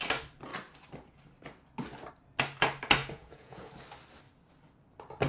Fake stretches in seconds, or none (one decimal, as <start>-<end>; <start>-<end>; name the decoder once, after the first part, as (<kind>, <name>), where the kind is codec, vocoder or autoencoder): 3.0-3.7 (vocoder, Vocos)